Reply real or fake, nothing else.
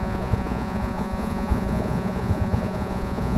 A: fake